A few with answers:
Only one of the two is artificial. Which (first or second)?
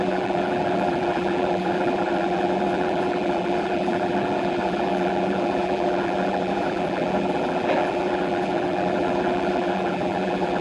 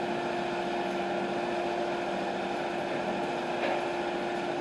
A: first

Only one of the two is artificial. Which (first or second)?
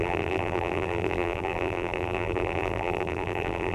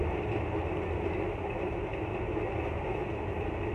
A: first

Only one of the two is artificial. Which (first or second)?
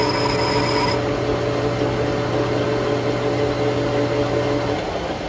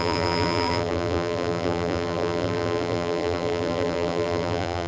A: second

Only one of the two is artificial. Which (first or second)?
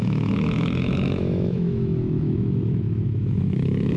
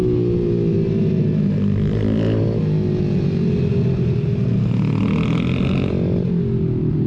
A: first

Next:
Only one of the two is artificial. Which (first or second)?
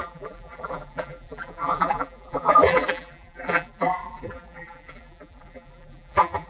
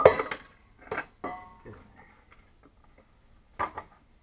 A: first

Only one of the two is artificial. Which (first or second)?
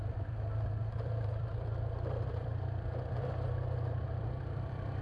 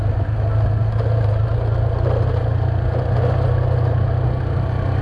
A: first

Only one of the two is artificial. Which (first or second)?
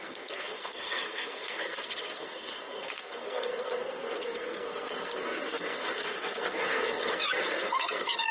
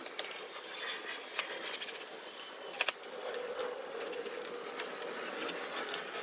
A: first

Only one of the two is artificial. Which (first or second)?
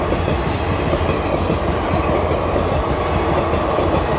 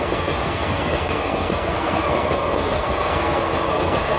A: second